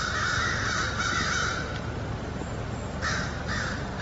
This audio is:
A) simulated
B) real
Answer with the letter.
B